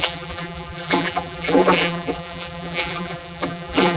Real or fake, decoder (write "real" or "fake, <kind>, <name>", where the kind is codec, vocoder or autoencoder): fake, vocoder, BigVGAN v2